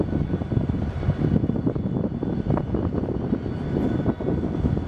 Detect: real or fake real